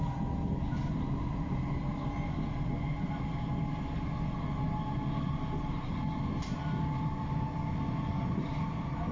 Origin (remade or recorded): recorded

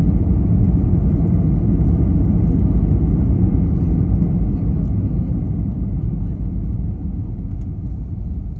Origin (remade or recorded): recorded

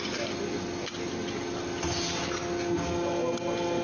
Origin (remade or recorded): recorded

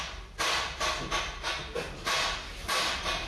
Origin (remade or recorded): recorded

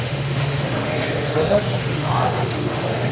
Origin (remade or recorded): remade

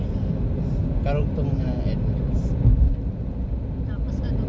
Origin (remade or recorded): recorded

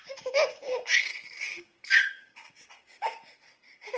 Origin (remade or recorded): remade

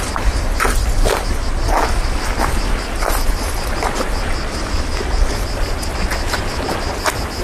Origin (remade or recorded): recorded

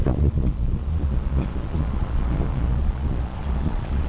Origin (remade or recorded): remade